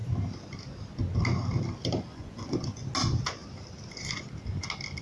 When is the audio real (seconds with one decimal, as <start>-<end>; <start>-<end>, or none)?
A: 0.0-2.1; 2.8-5.0